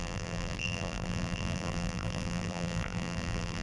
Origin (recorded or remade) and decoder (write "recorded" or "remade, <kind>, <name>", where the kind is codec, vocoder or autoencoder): remade, vocoder, BigVGAN v2